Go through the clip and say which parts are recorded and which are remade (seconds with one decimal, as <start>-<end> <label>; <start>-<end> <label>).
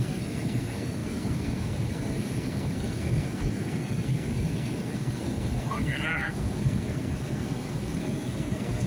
0.0-8.9 remade